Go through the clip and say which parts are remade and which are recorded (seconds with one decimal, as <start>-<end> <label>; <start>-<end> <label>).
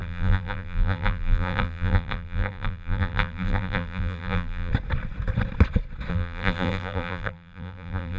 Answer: 0.0-4.7 remade; 4.7-6.1 recorded; 6.1-8.2 remade